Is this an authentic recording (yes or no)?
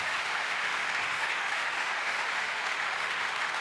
no